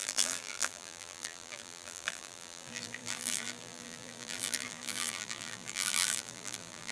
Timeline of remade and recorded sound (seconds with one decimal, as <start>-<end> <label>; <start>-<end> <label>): 0.0-6.9 remade